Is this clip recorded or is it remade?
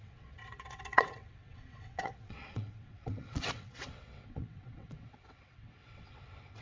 remade